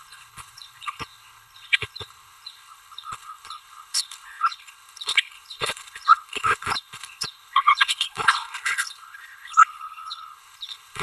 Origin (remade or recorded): remade